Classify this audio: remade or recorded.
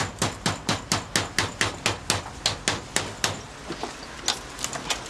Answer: recorded